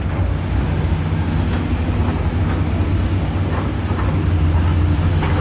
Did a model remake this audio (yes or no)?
no